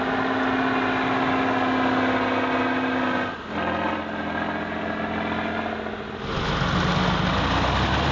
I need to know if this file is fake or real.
real